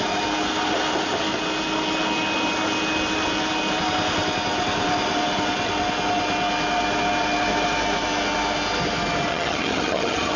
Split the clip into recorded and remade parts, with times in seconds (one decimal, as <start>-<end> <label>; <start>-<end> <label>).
0.0-9.3 recorded; 9.3-10.4 remade